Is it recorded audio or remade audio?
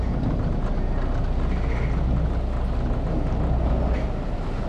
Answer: recorded